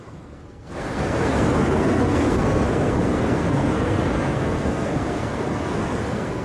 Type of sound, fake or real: fake